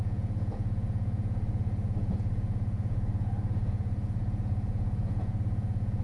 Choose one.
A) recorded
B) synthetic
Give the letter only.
B